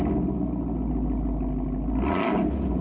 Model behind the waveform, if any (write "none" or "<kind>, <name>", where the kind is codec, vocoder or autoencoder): none